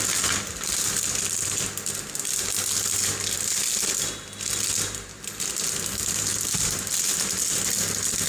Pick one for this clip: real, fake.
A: real